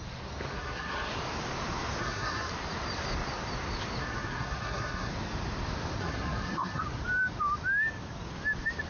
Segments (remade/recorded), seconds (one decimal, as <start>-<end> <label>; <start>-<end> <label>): 0.0-0.5 recorded; 0.5-1.1 remade; 1.1-2.0 recorded; 2.0-2.5 remade; 2.5-4.0 recorded; 4.0-5.1 remade; 5.1-6.0 recorded; 6.0-6.8 remade; 6.8-8.9 recorded